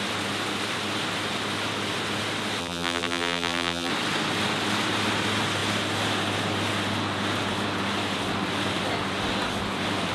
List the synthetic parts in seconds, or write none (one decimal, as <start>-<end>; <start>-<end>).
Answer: 2.6-3.9